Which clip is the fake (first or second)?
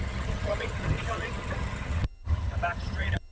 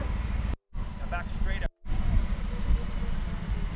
first